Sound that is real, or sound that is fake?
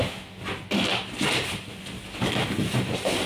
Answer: real